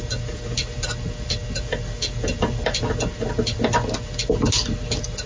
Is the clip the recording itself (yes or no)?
yes